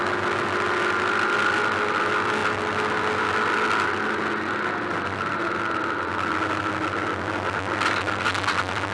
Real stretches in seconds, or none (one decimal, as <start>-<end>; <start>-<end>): 0.0-8.9